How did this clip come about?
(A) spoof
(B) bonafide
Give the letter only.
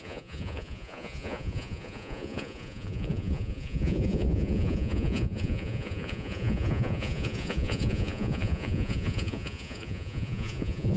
A